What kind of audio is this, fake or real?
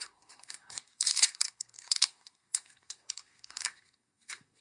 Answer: fake